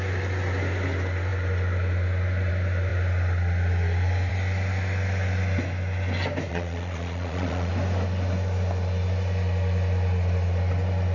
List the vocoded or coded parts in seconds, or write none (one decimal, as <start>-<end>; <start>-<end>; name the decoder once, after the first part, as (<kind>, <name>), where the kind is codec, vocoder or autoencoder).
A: 6.5-7.7 (vocoder, Vocos)